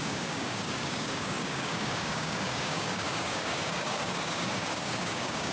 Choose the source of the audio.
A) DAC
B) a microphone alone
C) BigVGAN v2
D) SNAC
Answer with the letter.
A